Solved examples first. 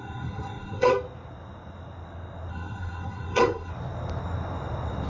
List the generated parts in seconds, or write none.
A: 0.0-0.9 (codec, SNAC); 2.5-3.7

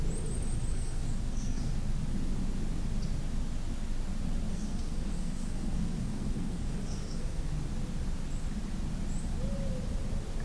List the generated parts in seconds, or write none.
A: 0.7-1.7 (codec, SNAC); 4.5-7.5

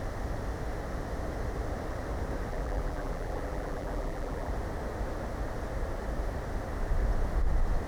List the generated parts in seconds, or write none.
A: 2.5-4.5 (vocoder, BigVGAN v2)

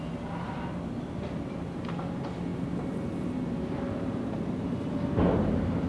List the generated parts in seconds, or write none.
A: none

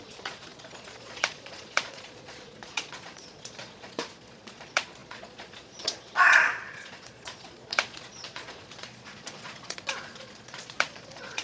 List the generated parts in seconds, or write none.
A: 0.0-11.4 (vocoder, Vocos)

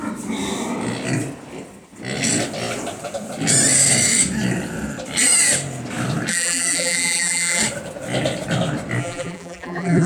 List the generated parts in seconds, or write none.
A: 6.3-7.6 (vocoder, BigVGAN v2); 9.0-10.1

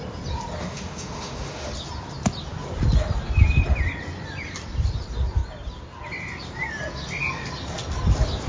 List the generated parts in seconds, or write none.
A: 0.6-1.7 (autoencoder, DAC-VAE)